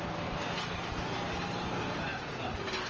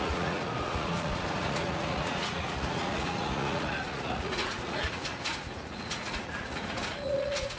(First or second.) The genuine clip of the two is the first